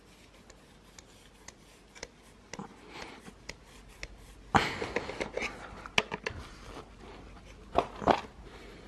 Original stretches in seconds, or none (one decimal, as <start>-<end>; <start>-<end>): 0.0-8.9